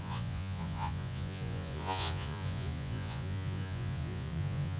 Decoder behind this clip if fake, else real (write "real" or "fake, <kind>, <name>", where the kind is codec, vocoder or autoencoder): fake, vocoder, Vocos